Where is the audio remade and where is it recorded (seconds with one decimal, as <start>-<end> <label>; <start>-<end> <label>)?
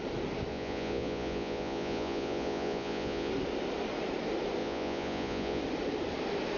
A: 0.0-0.5 recorded; 0.5-3.3 remade; 3.3-4.6 recorded; 4.6-5.6 remade; 5.6-6.6 recorded